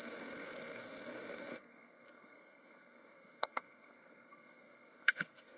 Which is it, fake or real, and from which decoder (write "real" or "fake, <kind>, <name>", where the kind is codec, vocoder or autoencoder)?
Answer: fake, codec, SNAC